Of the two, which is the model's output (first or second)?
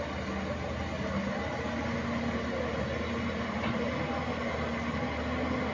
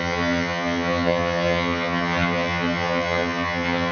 second